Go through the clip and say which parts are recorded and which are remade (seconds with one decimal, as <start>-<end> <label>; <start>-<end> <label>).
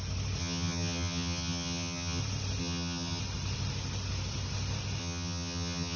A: 0.0-0.4 recorded; 0.4-2.2 remade; 2.2-2.6 recorded; 2.6-3.2 remade; 3.2-5.0 recorded; 5.0-6.0 remade